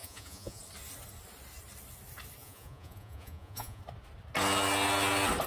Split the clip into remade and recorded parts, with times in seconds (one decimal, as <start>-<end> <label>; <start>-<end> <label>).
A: 0.0-0.6 remade; 0.6-2.4 recorded; 2.4-3.8 remade; 3.8-5.5 recorded